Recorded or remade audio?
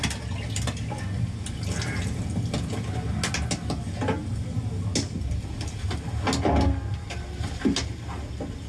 recorded